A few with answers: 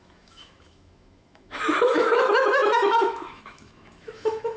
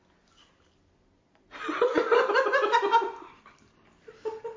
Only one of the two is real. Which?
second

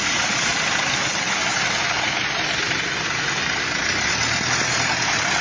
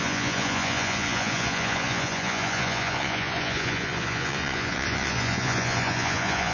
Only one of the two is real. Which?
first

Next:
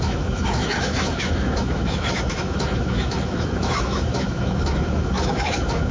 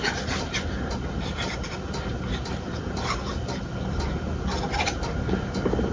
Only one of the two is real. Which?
second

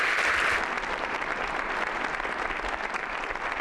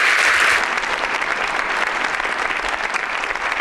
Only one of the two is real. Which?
first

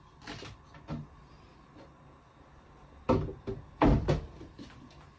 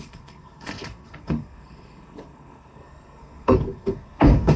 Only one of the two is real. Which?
first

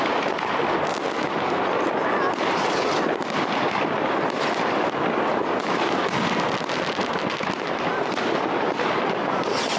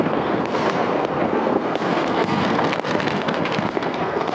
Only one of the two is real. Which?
first